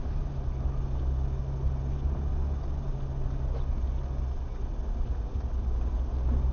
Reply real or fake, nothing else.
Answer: real